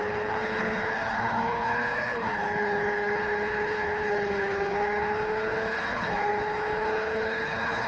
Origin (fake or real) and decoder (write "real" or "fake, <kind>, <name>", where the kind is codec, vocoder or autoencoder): fake, codec, HILCodec